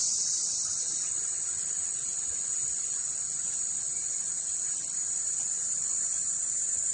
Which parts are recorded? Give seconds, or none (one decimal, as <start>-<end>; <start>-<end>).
2.1-4.0